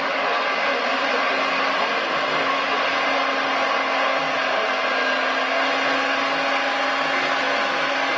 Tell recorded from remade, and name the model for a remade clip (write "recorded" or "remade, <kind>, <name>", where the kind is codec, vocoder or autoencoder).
recorded